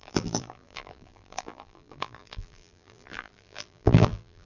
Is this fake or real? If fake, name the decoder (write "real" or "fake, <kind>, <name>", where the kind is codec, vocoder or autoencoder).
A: fake, vocoder, BigVGAN v2